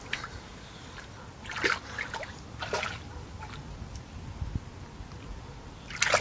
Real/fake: real